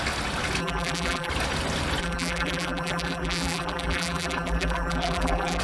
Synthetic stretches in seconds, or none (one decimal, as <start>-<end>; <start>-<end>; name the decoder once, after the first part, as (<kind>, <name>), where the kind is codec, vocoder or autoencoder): 0.6-1.3 (vocoder, BigVGAN v2); 2.0-5.6